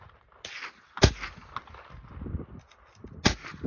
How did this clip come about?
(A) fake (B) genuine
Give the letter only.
B